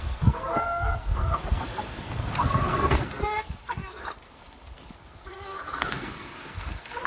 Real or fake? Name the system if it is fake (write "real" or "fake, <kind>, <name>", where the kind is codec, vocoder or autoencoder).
fake, codec, SNAC